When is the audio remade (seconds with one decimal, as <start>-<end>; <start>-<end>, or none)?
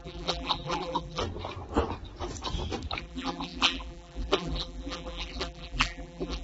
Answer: 0.0-1.2; 3.0-6.4